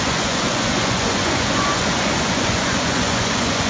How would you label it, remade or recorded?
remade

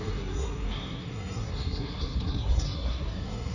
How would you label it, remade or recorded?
remade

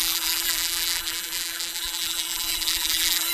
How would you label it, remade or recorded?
remade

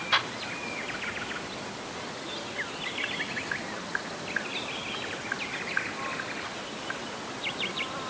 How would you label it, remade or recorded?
recorded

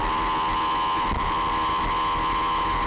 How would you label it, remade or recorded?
recorded